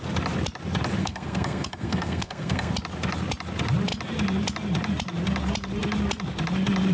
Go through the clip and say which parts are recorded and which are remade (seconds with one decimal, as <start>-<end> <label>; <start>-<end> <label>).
0.0-1.0 recorded; 1.0-2.7 remade; 2.7-6.9 recorded